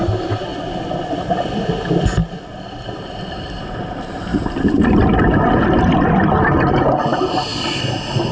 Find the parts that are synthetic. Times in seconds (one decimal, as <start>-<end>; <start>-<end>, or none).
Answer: 2.2-3.6